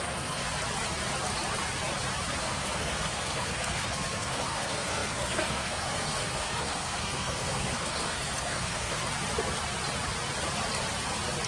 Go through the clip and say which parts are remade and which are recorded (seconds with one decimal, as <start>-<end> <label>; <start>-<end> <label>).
0.0-0.4 remade; 0.4-2.4 recorded; 2.4-9.0 remade; 9.0-11.5 recorded